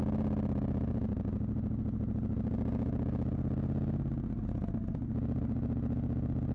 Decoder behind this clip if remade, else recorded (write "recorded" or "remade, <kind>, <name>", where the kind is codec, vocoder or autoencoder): recorded